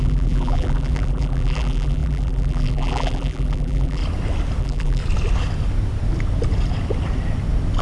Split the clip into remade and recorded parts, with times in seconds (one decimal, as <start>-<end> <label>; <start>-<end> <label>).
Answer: 0.0-4.0 remade; 4.0-4.6 recorded; 4.6-5.0 remade; 5.0-7.8 recorded